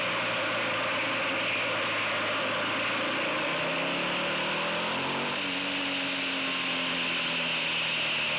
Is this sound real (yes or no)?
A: yes